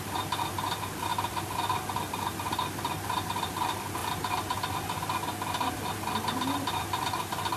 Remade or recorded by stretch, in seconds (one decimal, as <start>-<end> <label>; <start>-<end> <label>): 0.0-7.6 recorded